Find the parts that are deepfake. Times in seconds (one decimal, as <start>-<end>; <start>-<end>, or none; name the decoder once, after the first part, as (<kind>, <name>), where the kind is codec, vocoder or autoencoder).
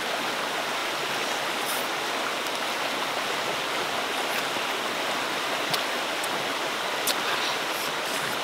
none